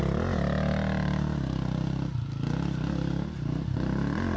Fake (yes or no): no